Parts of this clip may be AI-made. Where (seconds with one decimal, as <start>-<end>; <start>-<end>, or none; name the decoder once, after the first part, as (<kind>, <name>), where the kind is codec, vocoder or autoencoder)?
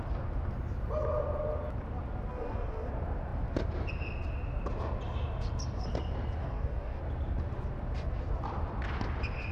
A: 2.3-2.9 (codec, DAC); 6.4-7.0